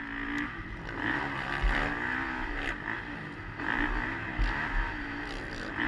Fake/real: real